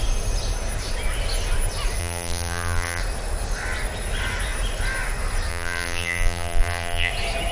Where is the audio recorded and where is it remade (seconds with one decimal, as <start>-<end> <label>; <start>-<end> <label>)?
0.0-2.0 recorded; 2.0-3.0 remade; 3.0-5.5 recorded; 5.5-7.1 remade; 7.1-7.5 recorded